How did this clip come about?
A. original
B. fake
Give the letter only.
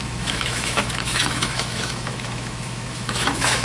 B